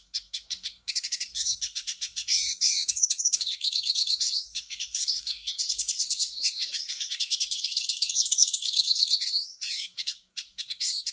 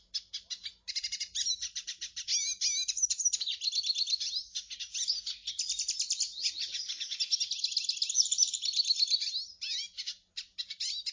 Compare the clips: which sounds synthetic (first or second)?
first